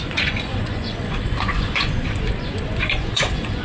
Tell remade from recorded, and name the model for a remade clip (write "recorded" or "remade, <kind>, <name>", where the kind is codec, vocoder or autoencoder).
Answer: remade, vocoder, Vocos